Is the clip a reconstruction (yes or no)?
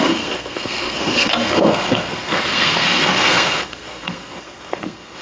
yes